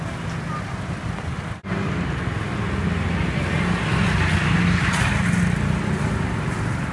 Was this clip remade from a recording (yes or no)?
no